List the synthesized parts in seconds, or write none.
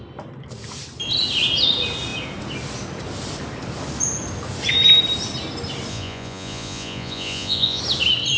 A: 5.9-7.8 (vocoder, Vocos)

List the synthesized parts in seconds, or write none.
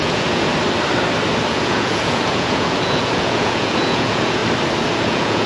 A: 0.0-0.5 (vocoder, Vocos); 1.5-4.4; 5.0-5.5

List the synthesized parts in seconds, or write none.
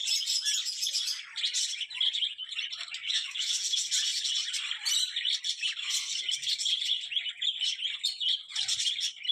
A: 3.0-3.5 (autoencoder, DAC-VAE)